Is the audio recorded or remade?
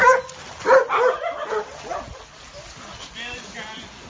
recorded